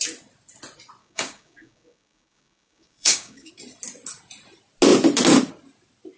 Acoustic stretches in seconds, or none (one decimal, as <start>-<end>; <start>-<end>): 0.0-1.0; 3.5-6.2